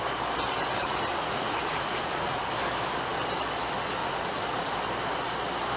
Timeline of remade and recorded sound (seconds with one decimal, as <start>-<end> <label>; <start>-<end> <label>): 0.0-0.8 recorded; 0.8-2.4 remade; 2.4-4.0 recorded; 4.0-4.7 remade; 4.7-5.8 recorded